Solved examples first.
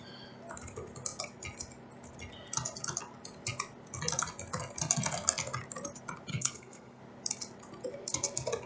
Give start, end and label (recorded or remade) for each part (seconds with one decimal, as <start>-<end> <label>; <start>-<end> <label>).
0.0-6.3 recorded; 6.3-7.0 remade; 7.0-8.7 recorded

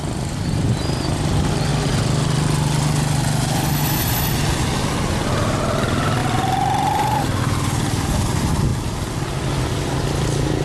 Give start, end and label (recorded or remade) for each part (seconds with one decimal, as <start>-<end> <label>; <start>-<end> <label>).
0.0-10.6 recorded

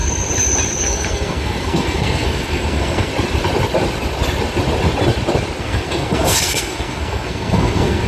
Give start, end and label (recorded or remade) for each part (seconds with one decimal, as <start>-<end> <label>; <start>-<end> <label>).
0.0-0.8 recorded; 0.8-3.1 remade; 3.1-5.6 recorded; 5.6-8.1 remade